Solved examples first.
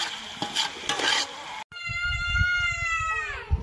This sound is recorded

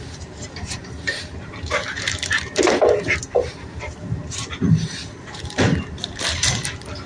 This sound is remade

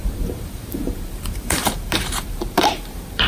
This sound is remade